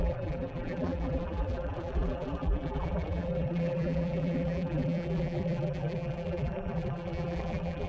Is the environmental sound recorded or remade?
remade